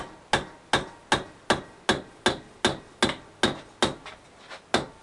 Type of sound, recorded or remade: recorded